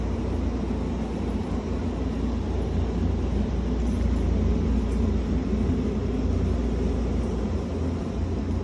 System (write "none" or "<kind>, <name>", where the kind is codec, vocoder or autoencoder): none